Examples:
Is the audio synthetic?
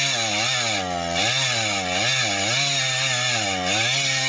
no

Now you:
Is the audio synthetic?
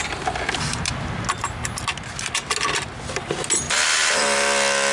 no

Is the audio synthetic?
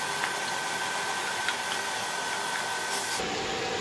no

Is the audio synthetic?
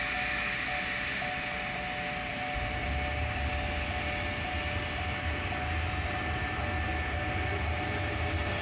no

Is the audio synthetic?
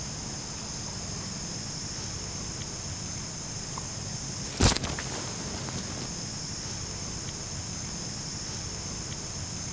no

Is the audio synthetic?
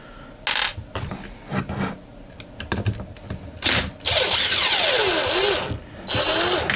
no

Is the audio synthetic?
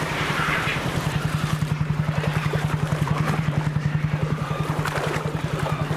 yes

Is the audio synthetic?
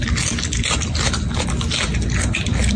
no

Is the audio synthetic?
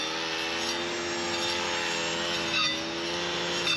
no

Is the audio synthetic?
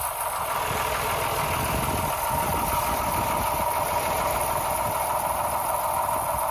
no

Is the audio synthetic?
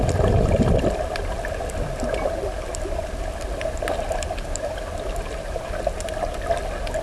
no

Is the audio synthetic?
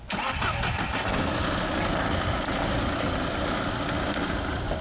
no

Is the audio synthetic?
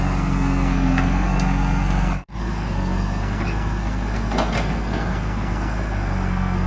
yes